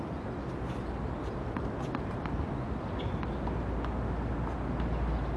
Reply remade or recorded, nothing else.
recorded